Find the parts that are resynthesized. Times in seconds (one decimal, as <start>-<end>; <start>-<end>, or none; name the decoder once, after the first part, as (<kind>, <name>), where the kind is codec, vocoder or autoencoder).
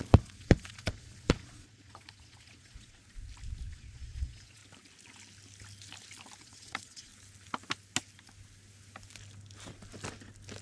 0.0-3.0 (vocoder, Vocos); 3.7-4.6; 6.4-7.1